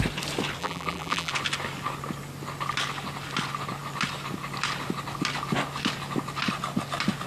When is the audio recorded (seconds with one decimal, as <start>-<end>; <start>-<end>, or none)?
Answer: 0.0-0.6; 1.3-7.3